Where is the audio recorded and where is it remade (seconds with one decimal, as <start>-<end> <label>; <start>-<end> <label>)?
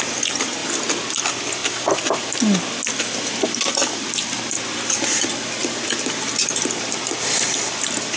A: 0.0-0.6 remade; 0.6-1.1 recorded; 1.1-1.6 remade; 1.6-3.4 recorded; 3.4-8.2 remade